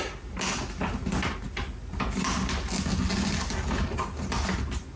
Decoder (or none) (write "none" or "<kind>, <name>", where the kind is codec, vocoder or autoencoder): none